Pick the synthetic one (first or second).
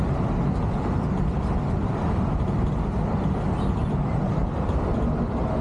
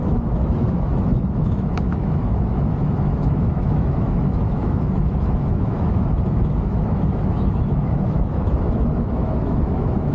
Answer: second